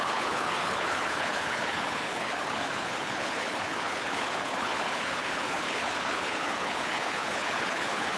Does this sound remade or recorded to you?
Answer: remade